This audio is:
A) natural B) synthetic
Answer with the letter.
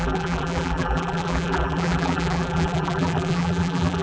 B